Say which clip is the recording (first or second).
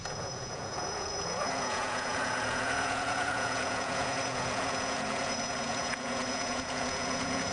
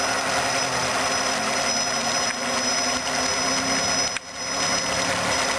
second